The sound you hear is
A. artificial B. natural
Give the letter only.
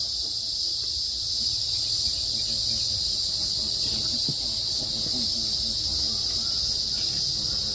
B